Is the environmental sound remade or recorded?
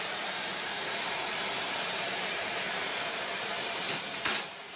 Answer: remade